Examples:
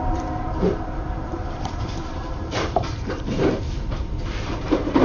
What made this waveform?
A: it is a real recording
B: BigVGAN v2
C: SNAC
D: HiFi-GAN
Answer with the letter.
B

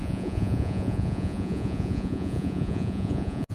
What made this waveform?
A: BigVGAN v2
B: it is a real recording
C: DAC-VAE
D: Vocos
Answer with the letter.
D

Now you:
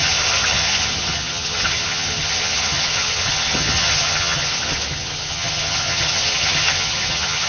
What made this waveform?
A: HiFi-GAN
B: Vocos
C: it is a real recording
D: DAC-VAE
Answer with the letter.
A